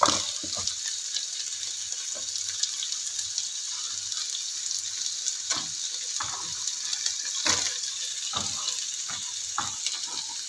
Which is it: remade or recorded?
recorded